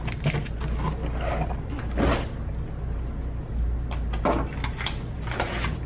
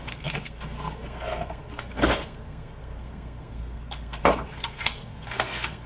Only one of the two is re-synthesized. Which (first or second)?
second